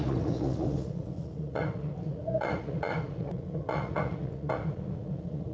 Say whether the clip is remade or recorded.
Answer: remade